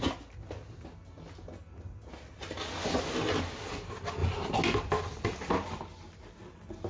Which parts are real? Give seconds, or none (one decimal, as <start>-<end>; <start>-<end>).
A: 0.0-6.9